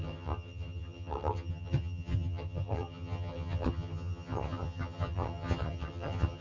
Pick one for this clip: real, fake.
fake